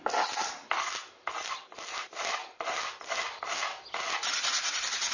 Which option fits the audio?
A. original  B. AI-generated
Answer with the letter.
A